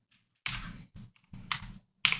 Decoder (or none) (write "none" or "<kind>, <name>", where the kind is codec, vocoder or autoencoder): none